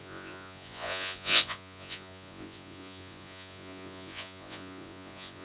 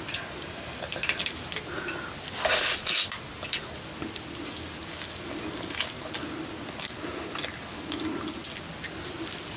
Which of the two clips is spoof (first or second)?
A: first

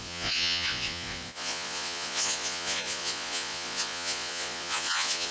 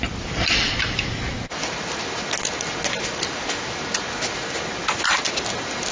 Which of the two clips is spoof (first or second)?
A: first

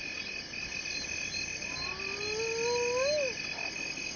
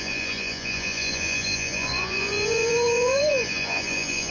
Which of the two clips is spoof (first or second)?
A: second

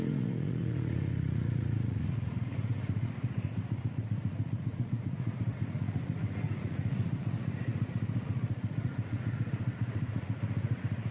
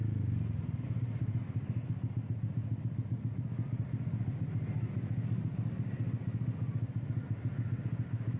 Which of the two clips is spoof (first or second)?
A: first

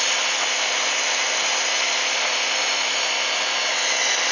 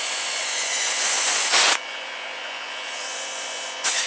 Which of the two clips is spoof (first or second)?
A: second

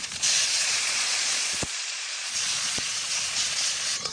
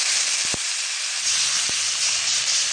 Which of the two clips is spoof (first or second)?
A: first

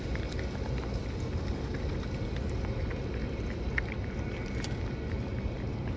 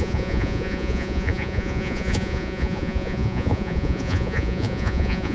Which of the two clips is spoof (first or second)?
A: second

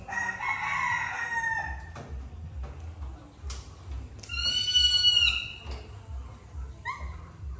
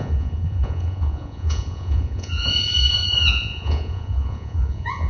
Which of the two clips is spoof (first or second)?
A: second